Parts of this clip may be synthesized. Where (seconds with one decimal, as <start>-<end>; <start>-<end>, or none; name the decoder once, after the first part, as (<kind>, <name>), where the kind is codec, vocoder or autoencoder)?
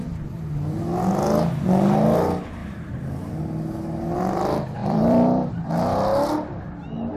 2.6-3.4 (vocoder, BigVGAN v2); 4.8-5.5